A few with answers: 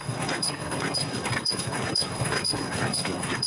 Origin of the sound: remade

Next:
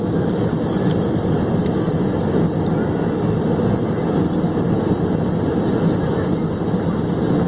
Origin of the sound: recorded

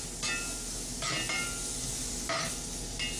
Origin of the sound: recorded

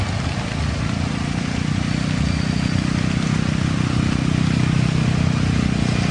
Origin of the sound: recorded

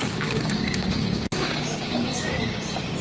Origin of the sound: remade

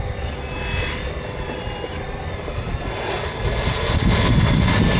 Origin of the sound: recorded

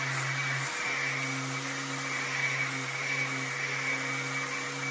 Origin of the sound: recorded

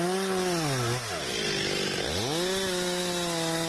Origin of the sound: recorded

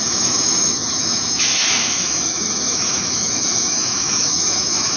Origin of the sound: remade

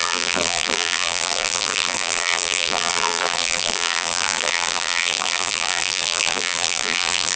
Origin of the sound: remade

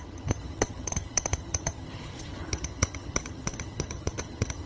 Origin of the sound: remade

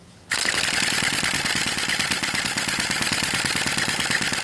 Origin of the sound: recorded